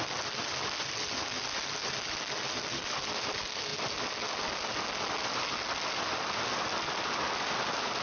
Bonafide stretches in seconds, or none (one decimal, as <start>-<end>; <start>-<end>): 0.0-8.0